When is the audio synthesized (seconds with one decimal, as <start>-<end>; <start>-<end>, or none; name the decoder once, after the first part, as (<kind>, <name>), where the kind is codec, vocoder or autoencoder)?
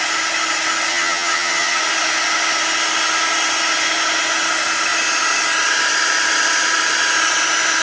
0.9-1.8 (vocoder, HiFi-GAN)